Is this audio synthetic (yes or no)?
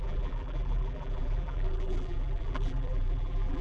yes